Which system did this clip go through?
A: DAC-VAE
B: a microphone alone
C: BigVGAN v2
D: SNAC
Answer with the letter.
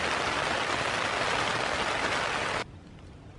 B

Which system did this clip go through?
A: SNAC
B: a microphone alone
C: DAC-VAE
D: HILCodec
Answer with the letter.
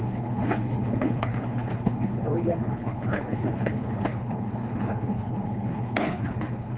D